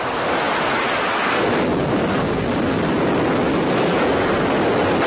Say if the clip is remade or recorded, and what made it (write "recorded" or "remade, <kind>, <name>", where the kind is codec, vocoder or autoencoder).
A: recorded